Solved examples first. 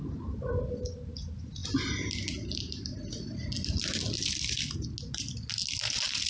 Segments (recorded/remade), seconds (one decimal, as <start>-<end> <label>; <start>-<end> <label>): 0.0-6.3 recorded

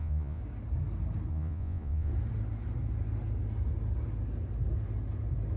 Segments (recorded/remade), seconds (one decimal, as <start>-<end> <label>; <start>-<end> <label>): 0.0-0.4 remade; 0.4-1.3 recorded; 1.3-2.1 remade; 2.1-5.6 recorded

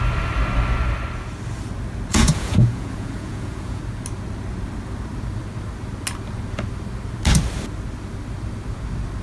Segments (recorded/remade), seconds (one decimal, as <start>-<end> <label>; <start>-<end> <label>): 0.0-2.1 recorded; 2.1-3.8 remade; 3.8-9.2 recorded

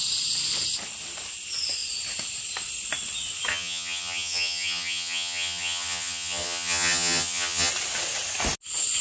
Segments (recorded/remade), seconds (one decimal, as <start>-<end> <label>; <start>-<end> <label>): 0.0-3.5 recorded; 3.5-7.7 remade; 7.7-9.0 recorded